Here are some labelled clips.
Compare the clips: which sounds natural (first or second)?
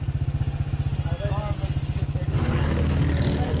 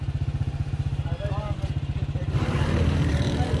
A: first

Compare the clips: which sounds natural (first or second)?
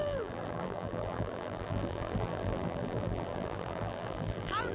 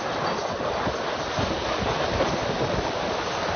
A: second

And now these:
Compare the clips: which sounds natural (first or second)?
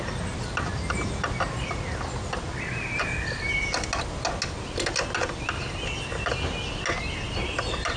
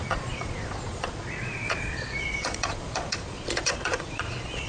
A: first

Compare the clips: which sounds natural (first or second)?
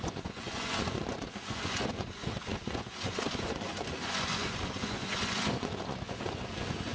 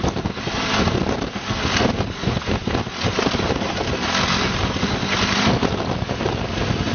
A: second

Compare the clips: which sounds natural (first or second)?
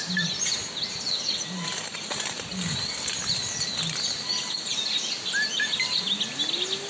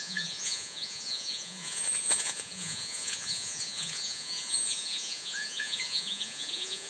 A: first